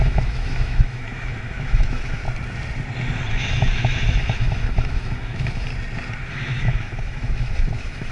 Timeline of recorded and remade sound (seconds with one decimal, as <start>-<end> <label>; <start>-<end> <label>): 0.0-2.2 remade; 2.2-3.3 recorded; 3.3-5.7 remade; 5.7-6.3 recorded; 6.3-8.1 remade